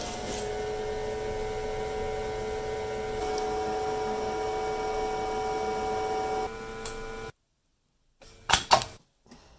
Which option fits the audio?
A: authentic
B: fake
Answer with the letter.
A